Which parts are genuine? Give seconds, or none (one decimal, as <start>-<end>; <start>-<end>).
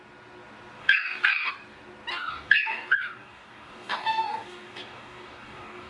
0.0-0.8; 1.5-2.1